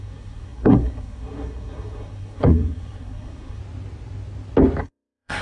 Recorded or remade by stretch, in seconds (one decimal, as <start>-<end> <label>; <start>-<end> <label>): 0.0-3.6 remade; 3.6-4.8 recorded; 4.8-5.4 remade